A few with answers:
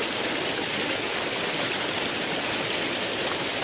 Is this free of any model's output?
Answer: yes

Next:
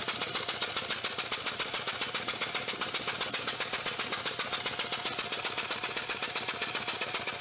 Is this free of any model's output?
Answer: yes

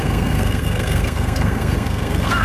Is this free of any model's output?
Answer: no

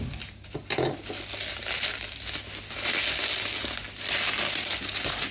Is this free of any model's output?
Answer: yes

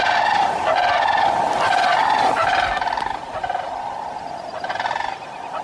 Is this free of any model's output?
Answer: yes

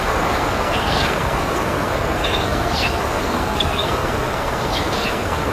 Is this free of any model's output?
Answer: no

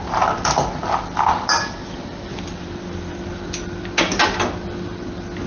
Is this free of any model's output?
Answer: yes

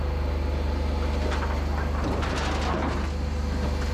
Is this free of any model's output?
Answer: yes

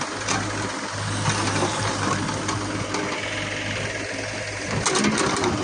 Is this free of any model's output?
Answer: yes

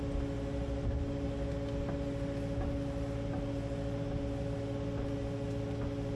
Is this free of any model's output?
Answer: yes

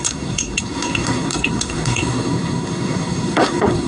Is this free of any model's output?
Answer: no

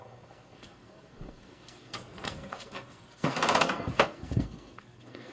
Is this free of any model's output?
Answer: no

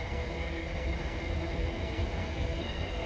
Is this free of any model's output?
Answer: no